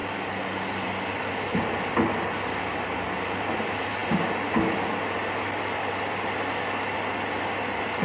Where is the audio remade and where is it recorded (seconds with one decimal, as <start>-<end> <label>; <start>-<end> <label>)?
0.0-8.0 recorded